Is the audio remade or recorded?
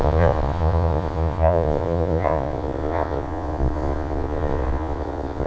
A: remade